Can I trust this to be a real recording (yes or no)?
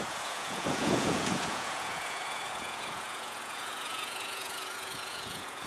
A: no